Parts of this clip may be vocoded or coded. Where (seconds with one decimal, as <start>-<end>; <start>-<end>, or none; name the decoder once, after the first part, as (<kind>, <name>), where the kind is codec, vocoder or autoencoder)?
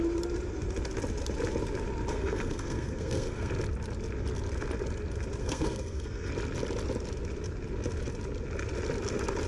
2.1-3.5 (codec, SNAC); 5.4-6.3